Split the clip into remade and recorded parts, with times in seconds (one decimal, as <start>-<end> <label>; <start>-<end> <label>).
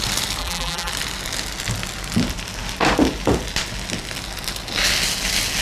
0.0-0.4 recorded; 0.4-0.9 remade; 0.9-5.6 recorded